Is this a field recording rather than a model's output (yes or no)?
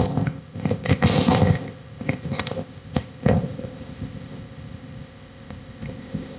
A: no